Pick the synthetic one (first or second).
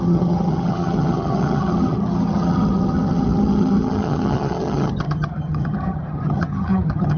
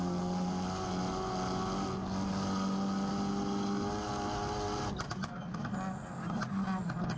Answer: first